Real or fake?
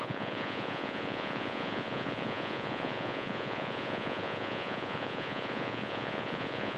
fake